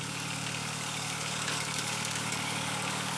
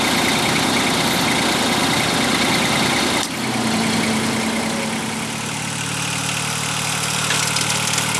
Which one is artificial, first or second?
first